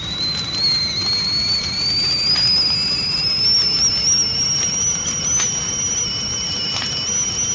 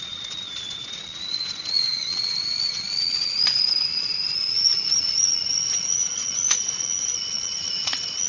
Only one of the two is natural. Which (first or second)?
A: first